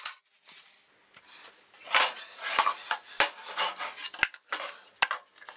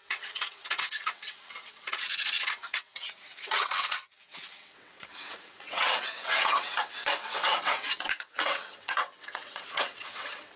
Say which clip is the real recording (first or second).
first